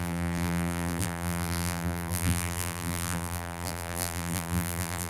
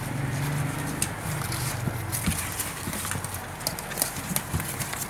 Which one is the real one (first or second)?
second